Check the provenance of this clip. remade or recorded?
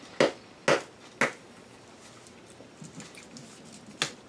recorded